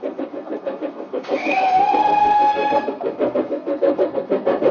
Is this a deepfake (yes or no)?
yes